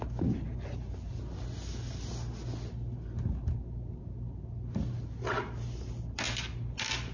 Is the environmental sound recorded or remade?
recorded